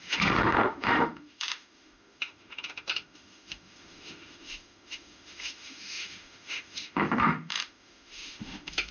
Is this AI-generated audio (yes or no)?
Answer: yes